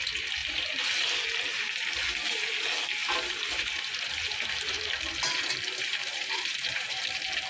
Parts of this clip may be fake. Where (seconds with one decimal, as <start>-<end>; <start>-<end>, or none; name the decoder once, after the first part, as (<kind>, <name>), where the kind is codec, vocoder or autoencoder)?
3.0-4.9 (vocoder, BigVGAN v2); 5.9-7.0